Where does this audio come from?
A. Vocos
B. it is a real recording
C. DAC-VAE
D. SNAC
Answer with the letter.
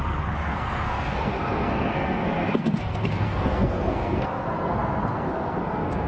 D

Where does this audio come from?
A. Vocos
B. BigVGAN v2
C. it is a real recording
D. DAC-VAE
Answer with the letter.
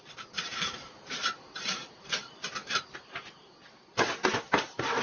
B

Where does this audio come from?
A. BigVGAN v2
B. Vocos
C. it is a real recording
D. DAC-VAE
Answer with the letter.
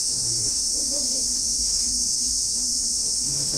D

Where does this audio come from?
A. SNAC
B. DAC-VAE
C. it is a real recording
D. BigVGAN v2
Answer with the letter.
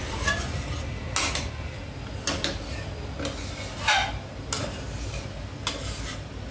C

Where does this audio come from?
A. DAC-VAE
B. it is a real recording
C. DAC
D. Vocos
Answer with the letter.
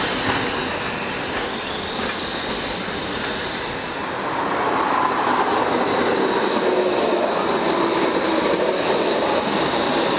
B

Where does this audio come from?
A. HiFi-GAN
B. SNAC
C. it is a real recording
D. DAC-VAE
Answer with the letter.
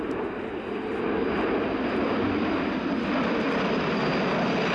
C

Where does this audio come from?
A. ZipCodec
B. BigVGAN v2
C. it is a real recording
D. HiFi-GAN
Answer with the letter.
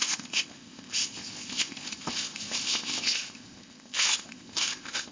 A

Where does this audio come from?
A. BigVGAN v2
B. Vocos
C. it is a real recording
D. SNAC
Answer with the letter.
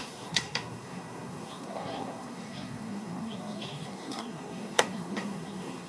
D